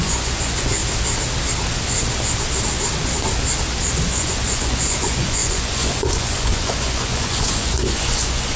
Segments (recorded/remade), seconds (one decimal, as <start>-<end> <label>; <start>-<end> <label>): 0.0-0.8 remade; 0.8-4.1 recorded; 4.1-8.6 remade